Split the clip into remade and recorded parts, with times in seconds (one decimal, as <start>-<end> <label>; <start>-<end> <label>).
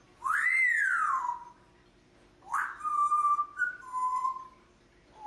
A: 0.0-5.3 recorded